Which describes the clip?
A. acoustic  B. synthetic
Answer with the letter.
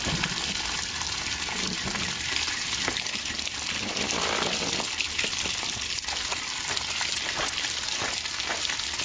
A